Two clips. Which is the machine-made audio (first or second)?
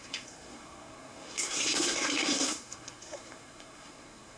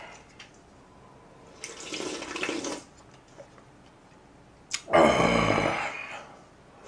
first